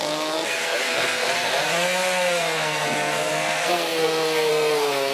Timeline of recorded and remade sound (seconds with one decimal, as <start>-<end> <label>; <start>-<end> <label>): 0.0-5.1 remade